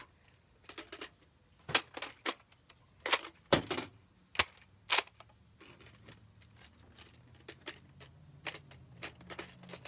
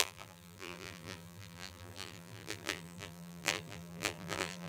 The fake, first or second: second